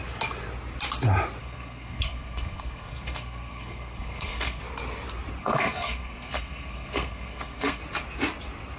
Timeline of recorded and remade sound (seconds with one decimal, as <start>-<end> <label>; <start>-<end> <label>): 0.0-1.4 recorded; 1.4-4.6 remade; 4.6-5.4 recorded; 5.4-7.8 remade; 7.8-8.8 recorded

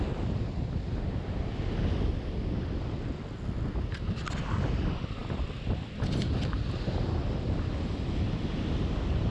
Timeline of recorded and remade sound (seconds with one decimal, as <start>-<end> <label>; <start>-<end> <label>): 0.0-9.3 recorded

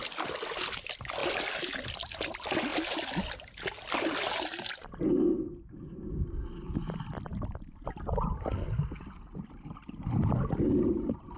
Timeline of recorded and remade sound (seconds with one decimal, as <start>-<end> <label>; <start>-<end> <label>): 0.0-11.4 recorded

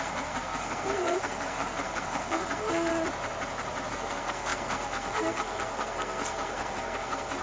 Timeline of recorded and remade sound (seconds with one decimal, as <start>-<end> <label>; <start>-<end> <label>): 0.0-2.9 remade; 2.9-3.9 recorded; 3.9-7.4 remade

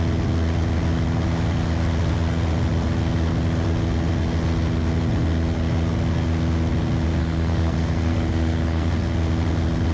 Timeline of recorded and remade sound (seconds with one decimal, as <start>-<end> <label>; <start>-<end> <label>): 0.0-7.2 recorded; 7.2-8.9 remade; 8.9-9.9 recorded

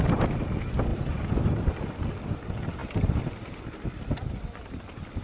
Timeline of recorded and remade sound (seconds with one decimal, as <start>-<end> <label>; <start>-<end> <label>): 0.0-5.2 recorded

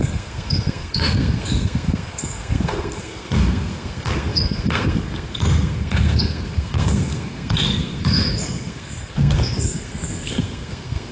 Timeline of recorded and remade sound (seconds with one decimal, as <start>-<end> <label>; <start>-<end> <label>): 0.0-11.1 remade